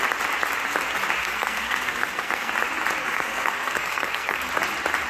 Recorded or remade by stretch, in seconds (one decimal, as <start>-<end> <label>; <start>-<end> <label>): 0.0-1.2 recorded; 1.2-2.5 remade; 2.5-3.0 recorded; 3.0-4.5 remade; 4.5-5.1 recorded